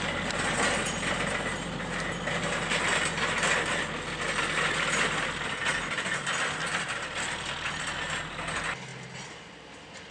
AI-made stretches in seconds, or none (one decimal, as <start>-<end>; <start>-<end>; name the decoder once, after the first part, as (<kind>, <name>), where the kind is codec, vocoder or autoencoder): none